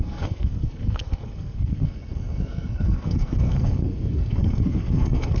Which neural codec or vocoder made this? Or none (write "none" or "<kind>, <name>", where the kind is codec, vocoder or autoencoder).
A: codec, SNAC